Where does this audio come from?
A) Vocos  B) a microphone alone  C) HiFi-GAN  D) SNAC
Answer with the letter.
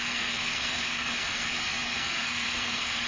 D